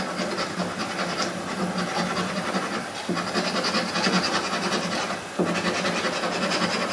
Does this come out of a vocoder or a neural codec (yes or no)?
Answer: no